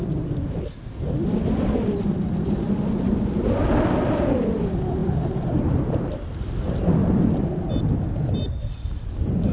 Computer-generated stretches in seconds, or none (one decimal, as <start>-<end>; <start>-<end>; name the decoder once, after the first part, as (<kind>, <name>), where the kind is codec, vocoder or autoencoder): none